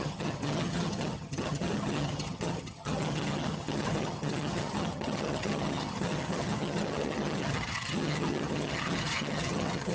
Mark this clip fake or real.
fake